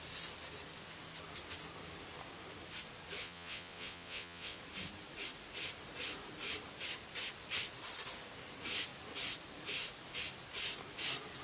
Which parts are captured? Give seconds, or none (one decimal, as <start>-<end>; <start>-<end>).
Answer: 0.0-3.2; 4.6-11.4